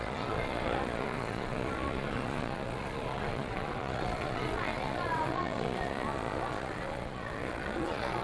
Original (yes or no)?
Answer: no